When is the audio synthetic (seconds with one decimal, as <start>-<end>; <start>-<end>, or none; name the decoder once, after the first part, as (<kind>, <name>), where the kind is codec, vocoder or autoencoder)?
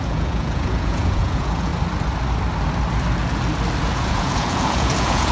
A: 0.0-1.7 (vocoder, Vocos); 3.8-5.3